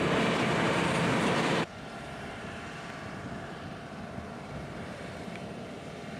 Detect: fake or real fake